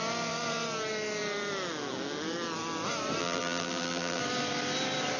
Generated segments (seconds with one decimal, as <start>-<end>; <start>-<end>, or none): 3.2-4.2